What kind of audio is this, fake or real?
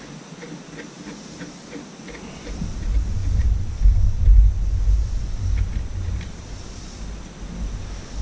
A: real